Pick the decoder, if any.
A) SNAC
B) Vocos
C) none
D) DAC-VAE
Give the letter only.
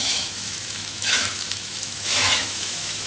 D